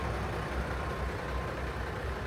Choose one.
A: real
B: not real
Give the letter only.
A